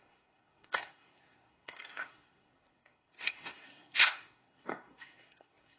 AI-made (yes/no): yes